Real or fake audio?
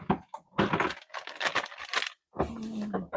real